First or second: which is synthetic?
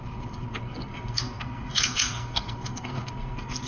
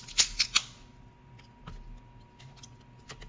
first